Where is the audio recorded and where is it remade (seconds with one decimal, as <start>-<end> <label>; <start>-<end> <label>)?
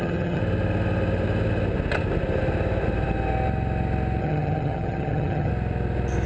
0.0-0.4 remade; 0.4-4.2 recorded; 4.2-5.5 remade; 5.5-6.3 recorded